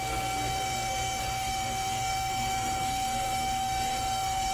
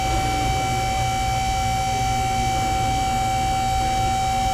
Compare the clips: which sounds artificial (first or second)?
first